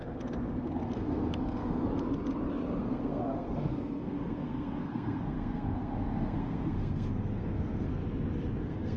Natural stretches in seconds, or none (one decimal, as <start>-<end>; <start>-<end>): 1.9-2.8; 8.0-8.6